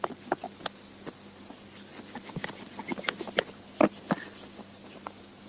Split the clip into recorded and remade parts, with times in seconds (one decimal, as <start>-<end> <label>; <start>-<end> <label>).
0.0-5.5 recorded